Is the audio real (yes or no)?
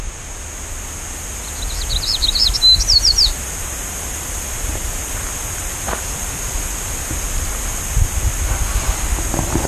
yes